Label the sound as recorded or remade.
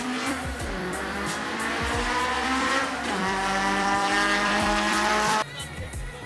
remade